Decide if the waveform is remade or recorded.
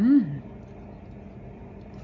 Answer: recorded